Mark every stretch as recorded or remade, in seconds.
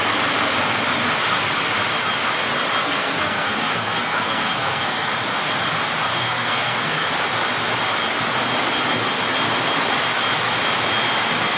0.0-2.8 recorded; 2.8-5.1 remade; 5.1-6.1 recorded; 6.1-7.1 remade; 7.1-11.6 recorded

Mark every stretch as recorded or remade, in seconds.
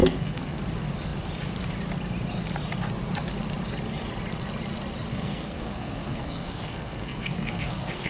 0.0-0.6 remade; 0.6-5.1 recorded; 5.1-8.1 remade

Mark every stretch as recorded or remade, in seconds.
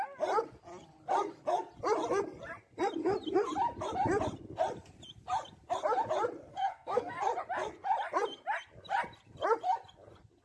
0.0-6.5 recorded; 6.5-7.2 remade; 7.2-10.4 recorded